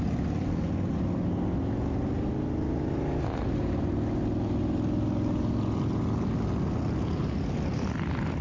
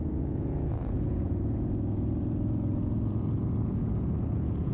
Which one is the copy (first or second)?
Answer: second